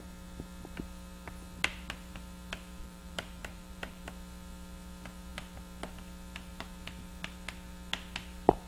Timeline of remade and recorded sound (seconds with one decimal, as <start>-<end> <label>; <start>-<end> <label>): 0.0-2.8 recorded; 2.8-4.1 remade; 4.1-8.7 recorded

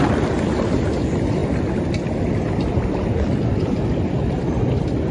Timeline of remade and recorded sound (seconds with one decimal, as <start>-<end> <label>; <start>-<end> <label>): 0.0-5.1 recorded